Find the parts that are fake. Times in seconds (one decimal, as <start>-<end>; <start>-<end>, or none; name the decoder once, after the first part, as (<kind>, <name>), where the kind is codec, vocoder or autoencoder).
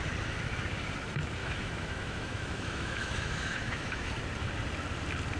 1.4-4.1 (autoencoder, DAC-VAE)